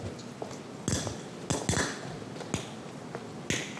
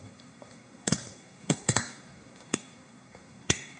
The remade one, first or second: second